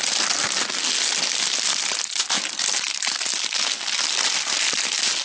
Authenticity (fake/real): real